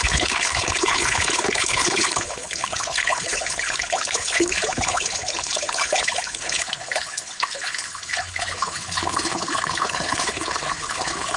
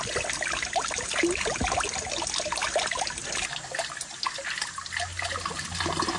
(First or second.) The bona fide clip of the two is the second